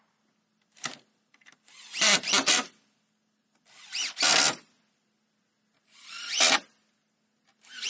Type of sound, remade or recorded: recorded